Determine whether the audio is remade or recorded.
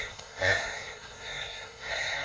remade